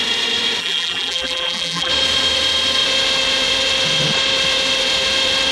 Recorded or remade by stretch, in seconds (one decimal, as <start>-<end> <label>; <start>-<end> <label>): 0.0-0.6 recorded; 0.6-1.9 remade; 1.9-5.5 recorded

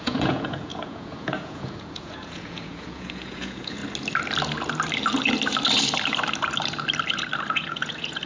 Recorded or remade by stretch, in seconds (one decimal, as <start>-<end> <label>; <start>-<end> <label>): 0.0-3.8 remade; 3.8-7.5 recorded; 7.5-8.3 remade

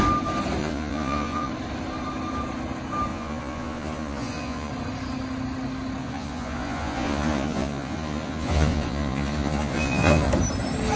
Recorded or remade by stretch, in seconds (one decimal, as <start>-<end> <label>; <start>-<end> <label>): 0.0-0.6 recorded; 0.6-1.5 remade; 1.5-3.1 recorded; 3.1-4.7 remade; 4.7-6.0 recorded; 6.0-10.3 remade; 10.3-11.0 recorded

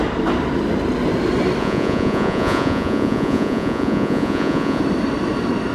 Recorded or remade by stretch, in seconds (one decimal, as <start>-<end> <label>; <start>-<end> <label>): 0.0-1.6 recorded; 1.6-4.8 remade; 4.8-5.7 recorded

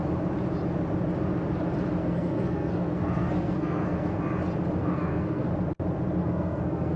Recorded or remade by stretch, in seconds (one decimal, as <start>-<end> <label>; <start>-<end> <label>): 0.0-2.0 recorded; 2.0-4.2 remade; 4.2-4.8 recorded; 4.8-5.5 remade; 5.5-6.2 recorded; 6.2-7.0 remade

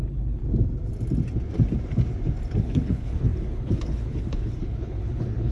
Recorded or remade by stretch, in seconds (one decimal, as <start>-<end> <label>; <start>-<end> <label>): 0.0-0.4 remade; 0.4-2.6 recorded; 2.6-5.5 remade

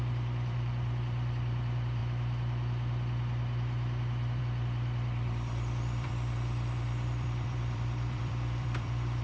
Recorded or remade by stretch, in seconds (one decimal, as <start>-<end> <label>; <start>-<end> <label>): 0.0-2.0 remade; 2.0-4.4 recorded; 4.4-9.2 remade

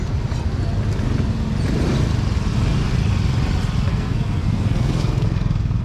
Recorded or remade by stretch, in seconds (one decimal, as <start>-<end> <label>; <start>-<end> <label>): 0.0-3.9 recorded; 3.9-5.8 remade